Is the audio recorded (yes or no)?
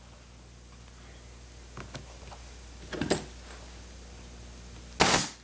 yes